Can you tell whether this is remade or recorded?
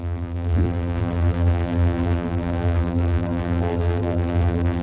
remade